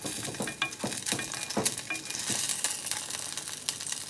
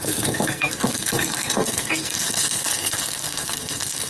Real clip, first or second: first